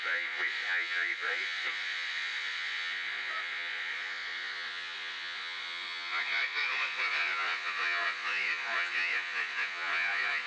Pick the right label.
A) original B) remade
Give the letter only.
B